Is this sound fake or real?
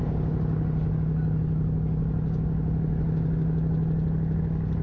real